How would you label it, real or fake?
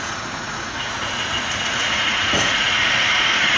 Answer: fake